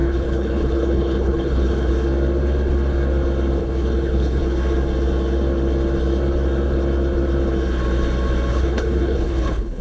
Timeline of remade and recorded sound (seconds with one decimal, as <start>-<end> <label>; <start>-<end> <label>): 0.0-1.9 remade; 1.9-3.6 recorded; 3.6-4.4 remade; 4.4-8.5 recorded; 8.5-9.8 remade